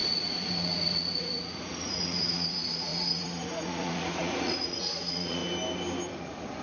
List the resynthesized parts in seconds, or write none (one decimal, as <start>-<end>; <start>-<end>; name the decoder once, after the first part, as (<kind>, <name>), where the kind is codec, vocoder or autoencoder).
0.0-5.4 (vocoder, Vocos); 6.1-6.6